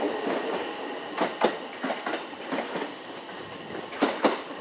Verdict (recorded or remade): recorded